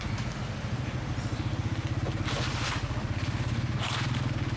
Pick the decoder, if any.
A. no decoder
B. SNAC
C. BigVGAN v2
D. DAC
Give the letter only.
A